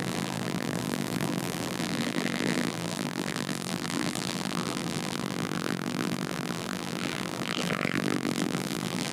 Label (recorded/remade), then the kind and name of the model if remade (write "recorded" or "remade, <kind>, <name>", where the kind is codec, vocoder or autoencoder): remade, vocoder, BigVGAN v2